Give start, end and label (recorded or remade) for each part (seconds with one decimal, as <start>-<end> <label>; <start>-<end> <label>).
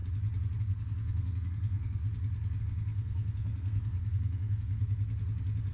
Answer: 0.0-0.6 recorded; 0.6-2.0 remade; 2.0-2.6 recorded; 2.6-4.8 remade; 4.8-5.7 recorded